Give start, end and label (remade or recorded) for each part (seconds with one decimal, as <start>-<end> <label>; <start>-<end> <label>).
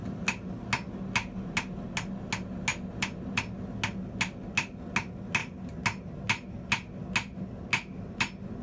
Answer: 0.0-8.6 recorded